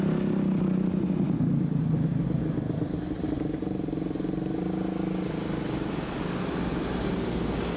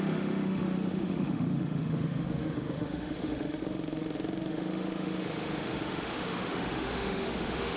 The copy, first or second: second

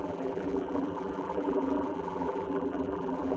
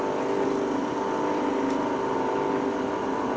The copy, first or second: first